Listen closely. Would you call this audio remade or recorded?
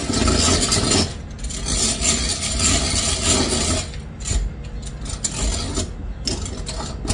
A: recorded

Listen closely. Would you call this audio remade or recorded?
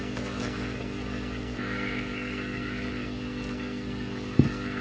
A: remade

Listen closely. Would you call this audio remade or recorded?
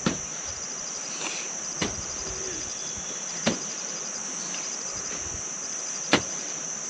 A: remade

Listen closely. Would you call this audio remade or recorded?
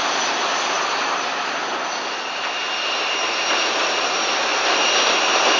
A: recorded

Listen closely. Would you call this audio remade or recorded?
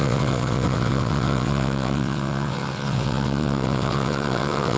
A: remade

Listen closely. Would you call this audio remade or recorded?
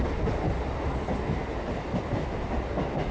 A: recorded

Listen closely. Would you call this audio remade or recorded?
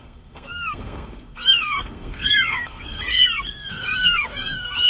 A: remade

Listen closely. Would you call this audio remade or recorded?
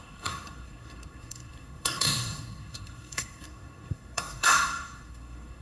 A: remade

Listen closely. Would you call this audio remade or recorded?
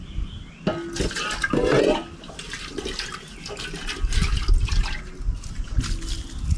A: recorded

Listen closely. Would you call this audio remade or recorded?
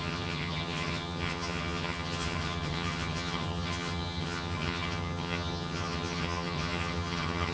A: remade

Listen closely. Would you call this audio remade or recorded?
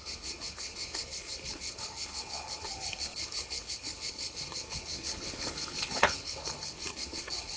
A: remade